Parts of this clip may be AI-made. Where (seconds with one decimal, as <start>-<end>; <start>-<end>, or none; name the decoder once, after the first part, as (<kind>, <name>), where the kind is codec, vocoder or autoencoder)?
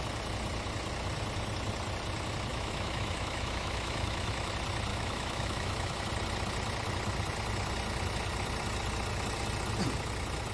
2.5-4.5 (autoencoder, DAC-VAE); 4.9-6.0